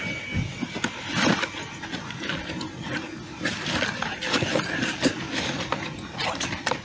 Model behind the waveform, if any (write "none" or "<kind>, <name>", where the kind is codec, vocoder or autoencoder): none